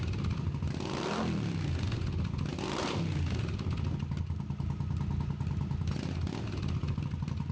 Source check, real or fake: real